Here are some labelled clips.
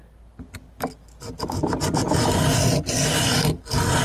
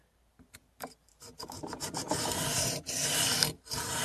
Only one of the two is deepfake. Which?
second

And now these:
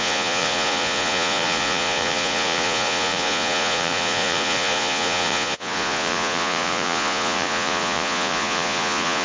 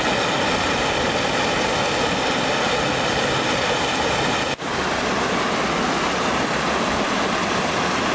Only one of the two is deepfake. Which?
first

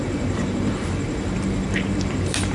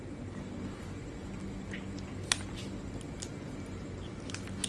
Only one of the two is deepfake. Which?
first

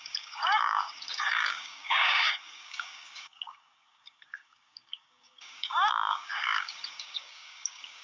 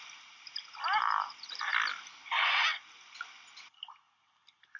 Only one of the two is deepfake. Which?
first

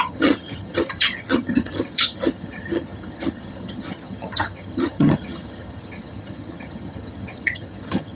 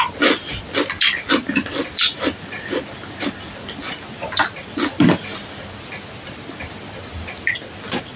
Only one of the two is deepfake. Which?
first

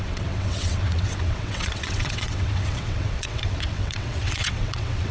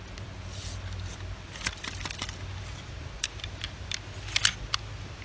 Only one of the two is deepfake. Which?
first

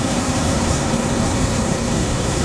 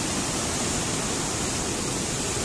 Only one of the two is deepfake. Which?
first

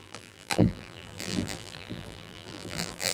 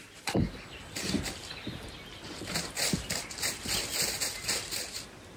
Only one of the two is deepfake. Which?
first